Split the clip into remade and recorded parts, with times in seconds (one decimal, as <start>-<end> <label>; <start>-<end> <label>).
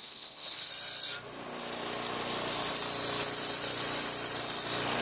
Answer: 0.0-0.7 remade; 0.7-5.0 recorded